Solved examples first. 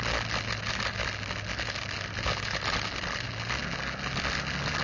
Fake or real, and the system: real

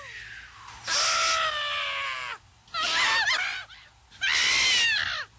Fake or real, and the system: real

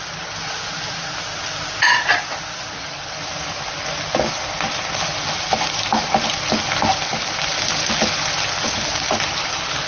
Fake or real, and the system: real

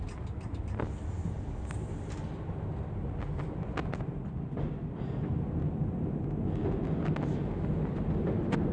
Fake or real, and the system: real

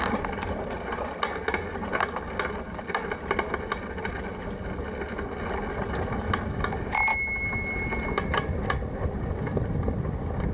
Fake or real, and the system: real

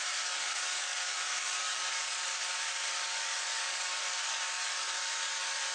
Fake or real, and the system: fake, codec, DAC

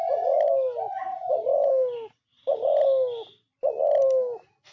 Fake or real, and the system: real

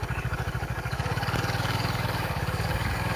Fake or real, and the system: fake, codec, DAC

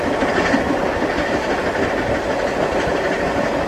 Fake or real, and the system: real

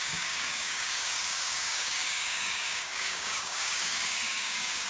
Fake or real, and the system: fake, codec, DAC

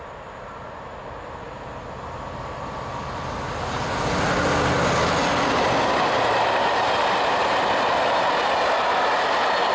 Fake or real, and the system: real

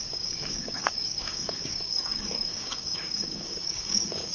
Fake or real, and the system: fake, codec, DAC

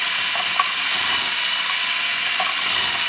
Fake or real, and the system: real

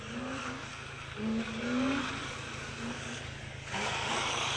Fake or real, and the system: fake, codec, DAC